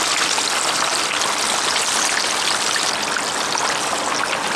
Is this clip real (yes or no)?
yes